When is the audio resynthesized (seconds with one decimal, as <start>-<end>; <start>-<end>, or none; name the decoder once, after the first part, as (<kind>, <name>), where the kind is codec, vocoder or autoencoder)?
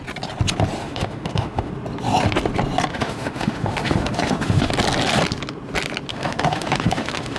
0.8-1.7 (autoencoder, DAC-VAE); 2.9-4.7; 6.1-7.4